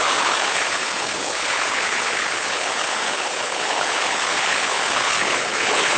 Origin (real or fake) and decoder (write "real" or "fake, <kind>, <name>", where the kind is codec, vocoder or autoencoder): fake, codec, HILCodec